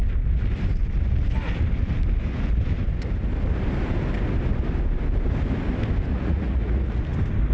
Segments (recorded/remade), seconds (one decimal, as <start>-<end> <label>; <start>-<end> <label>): 0.0-6.1 recorded; 6.1-7.0 remade; 7.0-7.5 recorded